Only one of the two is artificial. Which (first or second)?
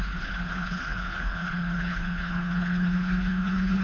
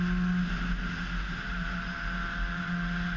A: first